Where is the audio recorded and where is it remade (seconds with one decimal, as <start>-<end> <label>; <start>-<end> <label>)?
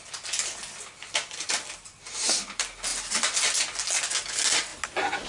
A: 0.0-5.3 recorded